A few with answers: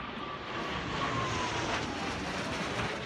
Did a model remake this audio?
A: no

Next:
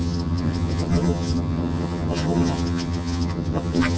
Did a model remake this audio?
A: yes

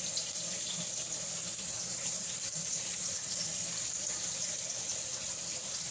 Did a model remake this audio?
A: yes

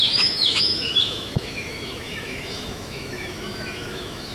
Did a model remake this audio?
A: yes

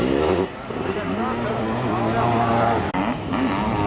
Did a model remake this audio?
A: no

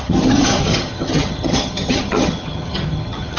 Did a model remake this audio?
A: yes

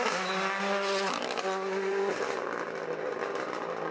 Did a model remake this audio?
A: no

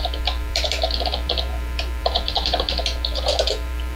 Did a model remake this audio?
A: yes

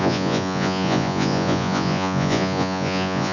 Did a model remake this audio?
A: yes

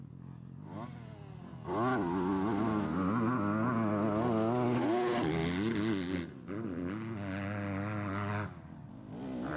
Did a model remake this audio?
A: no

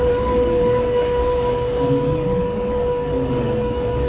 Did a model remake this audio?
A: yes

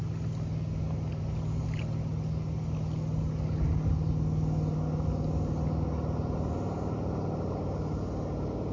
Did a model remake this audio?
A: no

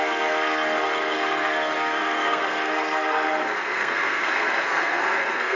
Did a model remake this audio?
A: yes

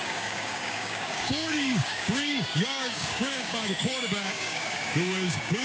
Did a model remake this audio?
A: yes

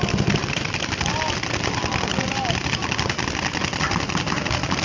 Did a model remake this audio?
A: no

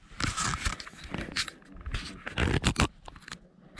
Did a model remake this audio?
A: no